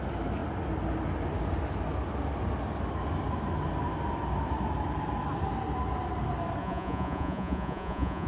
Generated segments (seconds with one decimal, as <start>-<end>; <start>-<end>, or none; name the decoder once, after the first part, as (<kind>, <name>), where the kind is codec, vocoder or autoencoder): 6.6-8.3 (vocoder, Vocos)